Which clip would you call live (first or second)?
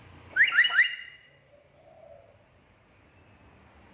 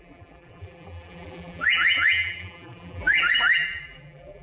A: first